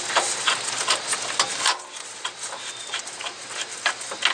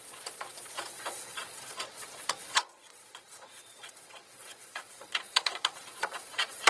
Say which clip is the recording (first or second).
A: first